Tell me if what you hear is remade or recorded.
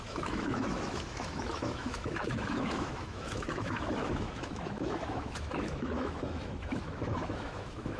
remade